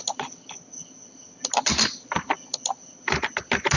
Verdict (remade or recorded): recorded